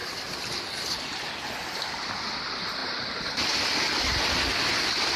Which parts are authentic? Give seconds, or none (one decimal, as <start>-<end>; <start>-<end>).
0.5-5.2